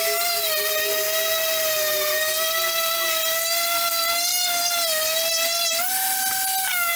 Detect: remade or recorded recorded